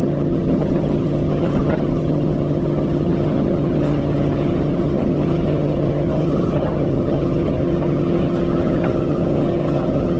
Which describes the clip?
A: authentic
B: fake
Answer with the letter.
B